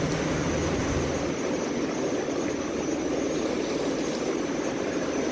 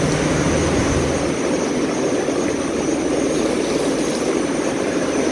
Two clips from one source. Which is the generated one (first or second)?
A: first